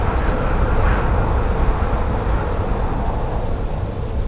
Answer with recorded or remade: recorded